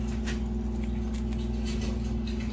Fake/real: real